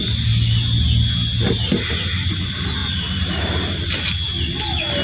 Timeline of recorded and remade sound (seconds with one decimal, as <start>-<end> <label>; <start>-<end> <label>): 0.0-2.8 recorded; 2.8-3.8 remade; 3.8-5.0 recorded